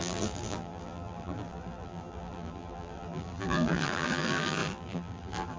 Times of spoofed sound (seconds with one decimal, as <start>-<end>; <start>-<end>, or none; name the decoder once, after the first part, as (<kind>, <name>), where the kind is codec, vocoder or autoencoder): 0.0-5.6 (vocoder, BigVGAN v2)